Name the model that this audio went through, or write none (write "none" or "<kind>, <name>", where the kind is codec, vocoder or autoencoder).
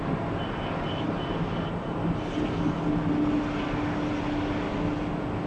none